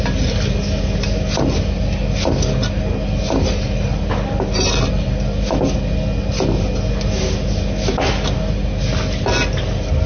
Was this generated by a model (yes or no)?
no